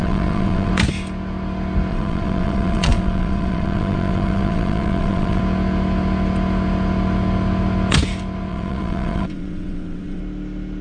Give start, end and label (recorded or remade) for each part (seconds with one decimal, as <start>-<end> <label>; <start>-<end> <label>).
0.0-0.7 remade; 0.7-1.9 recorded; 1.9-5.4 remade; 5.4-8.5 recorded; 8.5-10.2 remade; 10.2-10.8 recorded